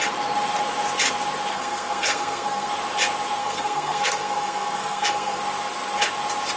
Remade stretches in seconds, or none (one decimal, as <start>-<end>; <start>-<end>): 1.5-2.7; 3.4-5.4